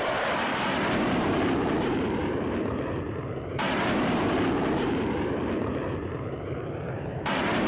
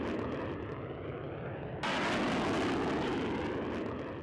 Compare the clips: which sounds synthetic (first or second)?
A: first